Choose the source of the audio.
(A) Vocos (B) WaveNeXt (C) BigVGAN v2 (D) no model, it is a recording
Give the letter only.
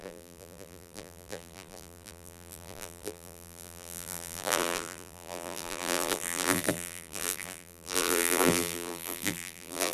C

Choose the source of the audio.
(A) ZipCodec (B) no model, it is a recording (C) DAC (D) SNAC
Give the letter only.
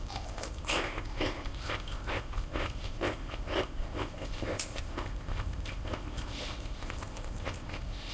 A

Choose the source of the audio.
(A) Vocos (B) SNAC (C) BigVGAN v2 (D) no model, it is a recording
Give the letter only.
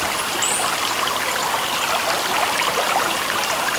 D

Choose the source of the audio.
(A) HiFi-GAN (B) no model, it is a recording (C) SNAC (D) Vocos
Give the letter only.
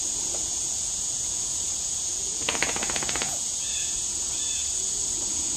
D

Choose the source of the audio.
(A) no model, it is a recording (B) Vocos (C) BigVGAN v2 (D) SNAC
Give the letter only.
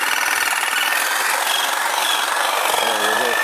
A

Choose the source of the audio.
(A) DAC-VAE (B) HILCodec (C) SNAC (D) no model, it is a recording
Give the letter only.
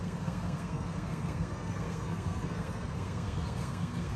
C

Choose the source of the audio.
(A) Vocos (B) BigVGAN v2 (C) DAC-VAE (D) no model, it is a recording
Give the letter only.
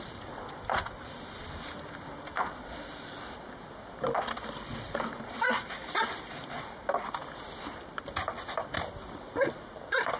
D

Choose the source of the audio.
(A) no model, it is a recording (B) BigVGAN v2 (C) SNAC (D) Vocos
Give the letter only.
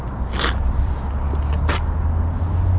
A